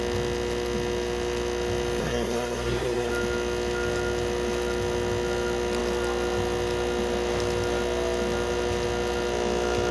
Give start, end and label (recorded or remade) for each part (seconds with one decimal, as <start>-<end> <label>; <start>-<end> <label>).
0.0-2.0 recorded; 2.0-3.1 remade; 3.1-9.9 recorded